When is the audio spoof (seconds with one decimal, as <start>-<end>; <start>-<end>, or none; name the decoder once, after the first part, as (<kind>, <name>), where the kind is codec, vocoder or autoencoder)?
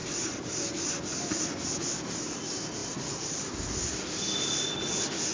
none